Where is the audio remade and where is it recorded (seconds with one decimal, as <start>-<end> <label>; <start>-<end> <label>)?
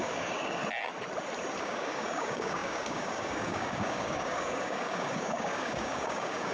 0.0-0.6 remade; 0.6-1.6 recorded; 1.6-6.5 remade